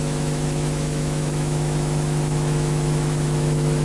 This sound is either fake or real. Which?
fake